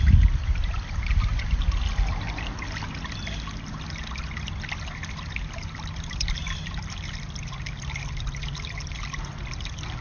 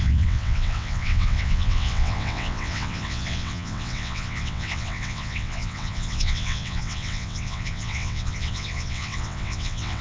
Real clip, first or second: first